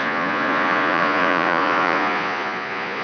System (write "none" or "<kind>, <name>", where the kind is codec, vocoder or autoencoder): vocoder, Vocos